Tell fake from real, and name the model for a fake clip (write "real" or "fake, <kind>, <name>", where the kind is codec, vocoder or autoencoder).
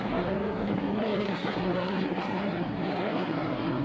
fake, codec, SNAC